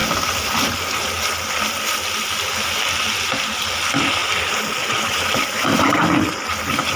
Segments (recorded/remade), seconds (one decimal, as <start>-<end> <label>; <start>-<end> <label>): 0.0-7.0 recorded